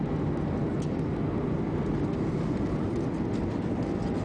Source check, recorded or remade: recorded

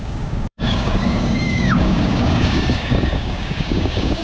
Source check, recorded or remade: remade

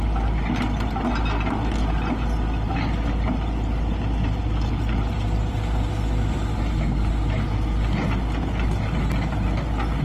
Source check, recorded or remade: recorded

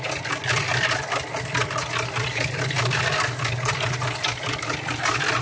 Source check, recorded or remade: recorded